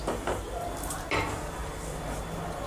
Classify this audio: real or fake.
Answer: real